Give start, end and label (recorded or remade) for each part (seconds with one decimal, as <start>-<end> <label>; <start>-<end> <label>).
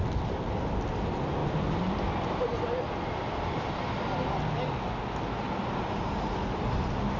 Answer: 0.0-7.2 recorded